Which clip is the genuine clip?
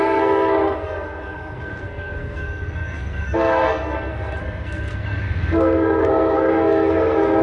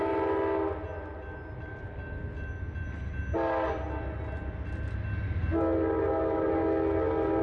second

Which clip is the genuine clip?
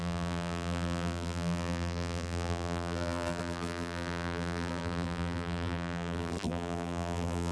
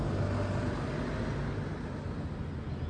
second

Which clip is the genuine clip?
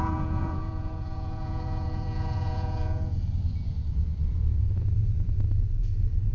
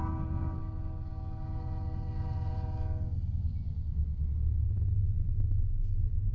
second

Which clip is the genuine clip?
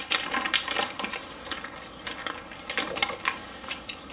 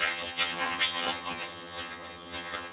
first